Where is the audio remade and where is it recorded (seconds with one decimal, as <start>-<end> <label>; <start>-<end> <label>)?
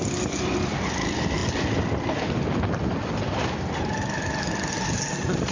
0.0-5.5 recorded